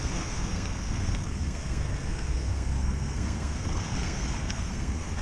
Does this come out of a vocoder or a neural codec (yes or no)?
yes